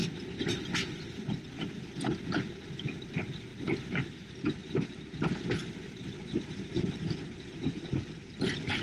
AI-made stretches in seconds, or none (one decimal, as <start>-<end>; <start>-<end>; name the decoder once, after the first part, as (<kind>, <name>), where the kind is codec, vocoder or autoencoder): 3.5-4.3 (vocoder, BigVGAN v2); 5.6-7.0